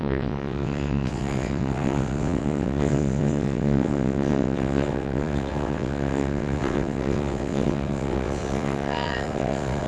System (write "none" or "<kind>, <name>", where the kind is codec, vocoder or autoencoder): vocoder, WaveNeXt